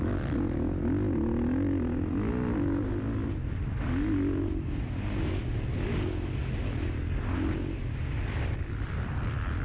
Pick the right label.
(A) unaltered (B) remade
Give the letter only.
A